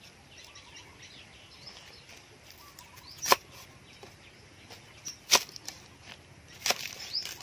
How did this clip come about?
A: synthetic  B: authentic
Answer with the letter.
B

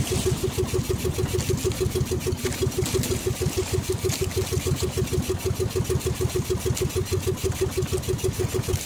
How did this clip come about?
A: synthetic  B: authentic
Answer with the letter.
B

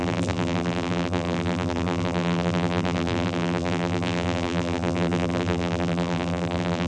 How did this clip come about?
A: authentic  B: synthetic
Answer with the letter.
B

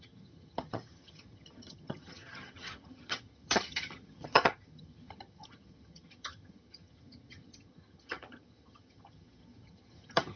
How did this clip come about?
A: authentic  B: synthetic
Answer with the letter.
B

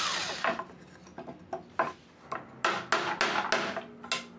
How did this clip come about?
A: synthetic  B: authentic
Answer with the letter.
B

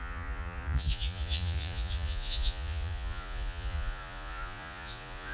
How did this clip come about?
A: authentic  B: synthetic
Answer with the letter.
B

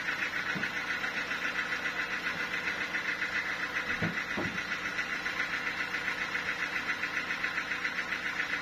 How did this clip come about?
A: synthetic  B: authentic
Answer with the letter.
B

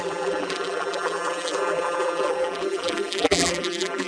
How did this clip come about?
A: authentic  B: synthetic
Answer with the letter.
B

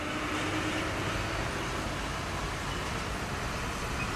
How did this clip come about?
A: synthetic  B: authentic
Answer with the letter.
B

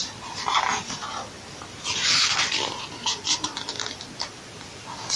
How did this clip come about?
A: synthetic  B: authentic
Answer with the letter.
B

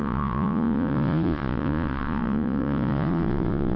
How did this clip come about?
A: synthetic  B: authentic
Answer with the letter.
A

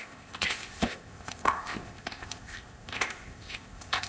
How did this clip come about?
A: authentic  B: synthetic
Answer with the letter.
B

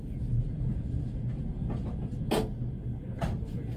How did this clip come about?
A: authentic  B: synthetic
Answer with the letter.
A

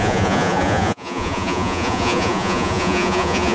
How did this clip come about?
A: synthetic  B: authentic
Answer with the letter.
A